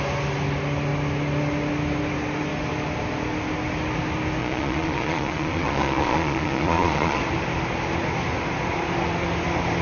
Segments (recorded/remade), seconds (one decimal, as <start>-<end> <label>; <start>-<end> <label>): 0.0-4.4 recorded; 4.4-7.2 remade; 7.2-9.8 recorded